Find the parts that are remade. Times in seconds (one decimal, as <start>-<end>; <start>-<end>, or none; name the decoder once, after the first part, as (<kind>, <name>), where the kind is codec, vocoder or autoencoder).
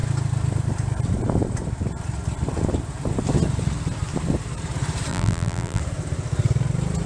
5.1-5.8 (vocoder, BigVGAN v2)